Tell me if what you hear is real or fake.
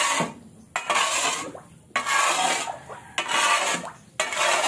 real